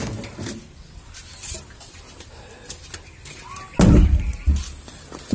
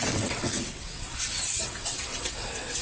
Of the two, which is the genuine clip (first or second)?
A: first